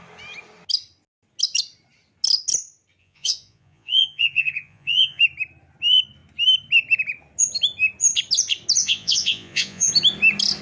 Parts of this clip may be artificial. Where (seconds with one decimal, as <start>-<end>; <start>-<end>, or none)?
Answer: 3.0-5.2; 8.8-9.9